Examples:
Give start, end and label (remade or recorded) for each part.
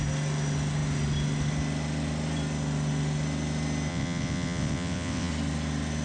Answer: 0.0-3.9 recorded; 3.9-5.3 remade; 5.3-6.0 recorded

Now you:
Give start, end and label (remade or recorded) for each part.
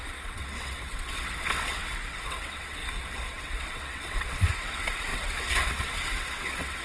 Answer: 0.0-2.8 remade; 2.8-3.3 recorded; 3.3-6.8 remade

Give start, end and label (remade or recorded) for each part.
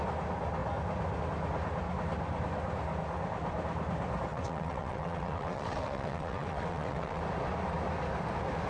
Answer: 0.0-4.3 recorded; 4.3-7.2 remade; 7.2-8.7 recorded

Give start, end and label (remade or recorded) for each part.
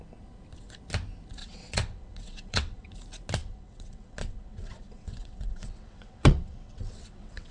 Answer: 0.0-1.4 recorded; 1.4-2.9 remade; 2.9-3.4 recorded; 3.4-7.5 remade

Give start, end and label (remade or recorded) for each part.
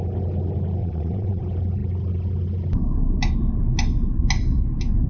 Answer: 0.0-0.8 recorded; 0.8-1.4 remade; 1.4-5.1 recorded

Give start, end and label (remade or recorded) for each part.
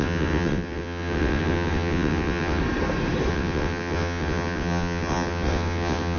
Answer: 0.0-2.6 remade; 2.6-3.3 recorded; 3.3-6.2 remade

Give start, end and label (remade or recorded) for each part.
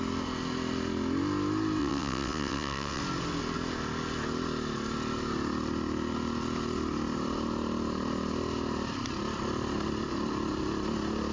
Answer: 0.0-1.8 recorded; 1.8-3.0 remade; 3.0-11.3 recorded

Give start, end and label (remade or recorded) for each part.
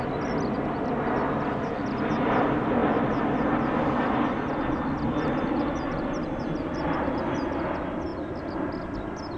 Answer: 0.0-9.4 recorded